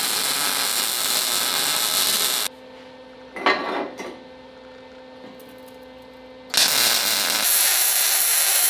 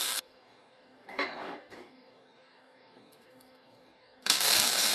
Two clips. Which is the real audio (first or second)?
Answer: first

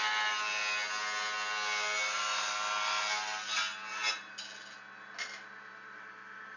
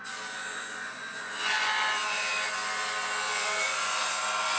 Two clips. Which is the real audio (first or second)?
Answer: first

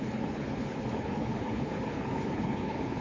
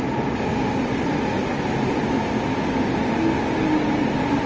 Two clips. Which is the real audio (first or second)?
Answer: second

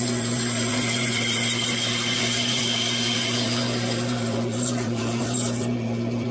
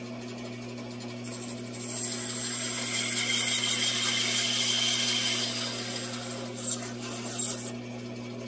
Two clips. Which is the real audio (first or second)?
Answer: second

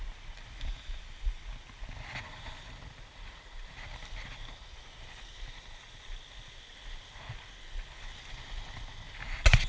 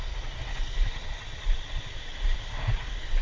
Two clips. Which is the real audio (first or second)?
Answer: first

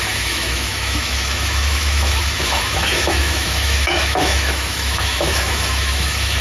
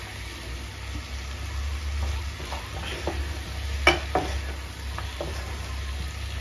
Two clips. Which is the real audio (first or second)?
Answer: second